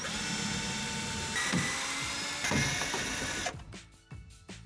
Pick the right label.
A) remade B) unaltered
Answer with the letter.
B